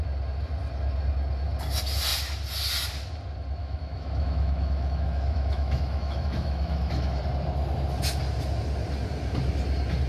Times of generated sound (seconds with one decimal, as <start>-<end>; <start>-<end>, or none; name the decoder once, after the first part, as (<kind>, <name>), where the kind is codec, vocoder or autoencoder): 3.6-7.2 (autoencoder, DAC-VAE)

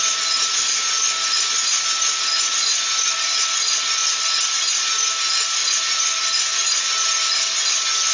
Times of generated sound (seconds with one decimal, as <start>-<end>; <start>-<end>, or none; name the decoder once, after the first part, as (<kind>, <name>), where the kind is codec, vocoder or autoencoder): none

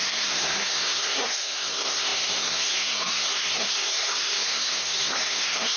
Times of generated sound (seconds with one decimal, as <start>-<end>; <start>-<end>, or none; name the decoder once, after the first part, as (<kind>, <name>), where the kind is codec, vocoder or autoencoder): 0.0-5.8 (codec, SNAC)

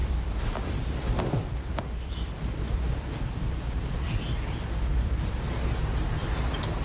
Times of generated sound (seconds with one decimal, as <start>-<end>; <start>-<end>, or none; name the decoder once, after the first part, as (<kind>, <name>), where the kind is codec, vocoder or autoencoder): 0.0-4.1 (vocoder, BigVGAN v2); 4.9-5.5; 6.2-6.8

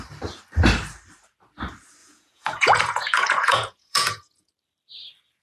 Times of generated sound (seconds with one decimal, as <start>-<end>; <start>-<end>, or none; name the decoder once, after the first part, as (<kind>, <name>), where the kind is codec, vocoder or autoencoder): 2.0-4.5 (vocoder, Vocos)

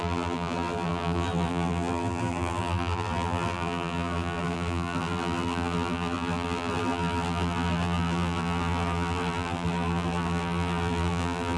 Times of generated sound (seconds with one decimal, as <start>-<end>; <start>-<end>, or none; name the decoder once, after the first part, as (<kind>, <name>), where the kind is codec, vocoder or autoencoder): 0.0-11.6 (vocoder, BigVGAN v2)

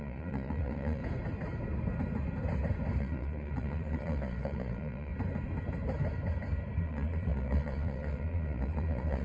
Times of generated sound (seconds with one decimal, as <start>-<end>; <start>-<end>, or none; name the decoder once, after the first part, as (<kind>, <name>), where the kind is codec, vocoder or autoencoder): 0.0-1.0 (vocoder, Vocos); 3.0-5.1; 6.8-9.2

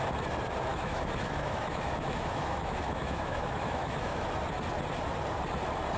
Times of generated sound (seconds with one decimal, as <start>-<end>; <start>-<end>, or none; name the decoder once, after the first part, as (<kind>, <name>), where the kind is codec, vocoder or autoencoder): 0.7-4.3 (autoencoder, DAC-VAE)